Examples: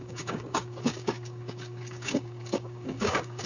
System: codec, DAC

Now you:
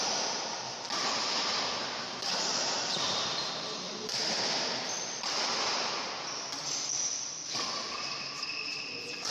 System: none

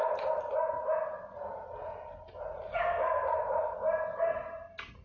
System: none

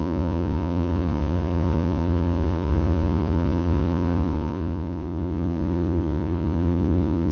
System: vocoder, Vocos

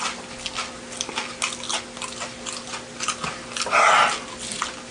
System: none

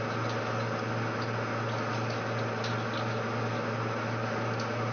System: none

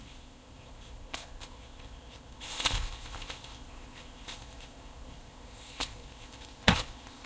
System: codec, ZipCodec